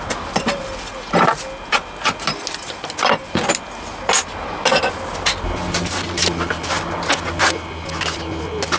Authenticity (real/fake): real